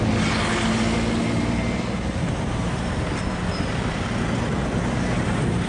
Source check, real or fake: real